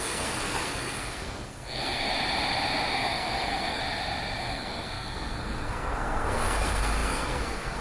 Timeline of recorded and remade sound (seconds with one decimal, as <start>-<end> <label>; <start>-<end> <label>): 0.0-2.1 remade; 2.1-2.9 recorded; 2.9-3.8 remade; 3.8-4.4 recorded; 4.4-7.8 remade